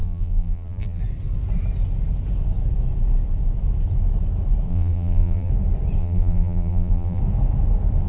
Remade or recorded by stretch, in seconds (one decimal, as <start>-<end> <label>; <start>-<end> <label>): 0.0-1.0 remade; 1.0-4.7 recorded; 4.7-5.5 remade; 5.5-6.0 recorded; 6.0-7.2 remade; 7.2-8.1 recorded